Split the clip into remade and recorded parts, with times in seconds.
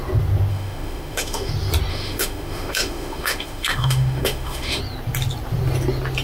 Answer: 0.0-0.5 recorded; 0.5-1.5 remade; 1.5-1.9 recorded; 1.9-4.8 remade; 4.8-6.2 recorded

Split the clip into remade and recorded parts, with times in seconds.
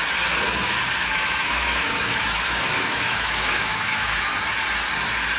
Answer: 0.0-1.0 recorded; 1.0-4.2 remade; 4.2-5.4 recorded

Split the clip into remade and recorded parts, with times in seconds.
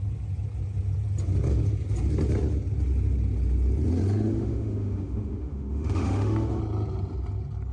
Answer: 0.0-4.3 recorded; 4.3-6.6 remade; 6.6-7.7 recorded